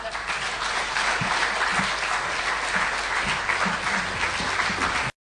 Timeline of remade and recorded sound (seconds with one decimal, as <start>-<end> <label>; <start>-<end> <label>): 0.0-5.3 recorded